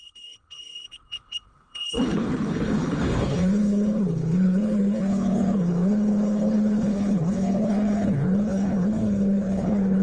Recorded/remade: remade